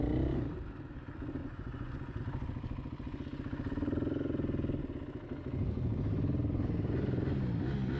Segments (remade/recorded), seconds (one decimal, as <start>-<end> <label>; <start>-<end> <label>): 0.0-1.4 recorded; 1.4-2.2 remade; 2.2-8.0 recorded